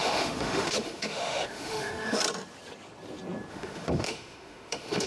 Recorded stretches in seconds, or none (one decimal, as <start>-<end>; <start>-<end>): 2.2-3.5